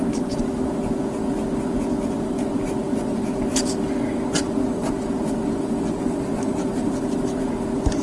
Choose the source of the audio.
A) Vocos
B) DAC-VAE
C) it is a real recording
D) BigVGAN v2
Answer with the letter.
C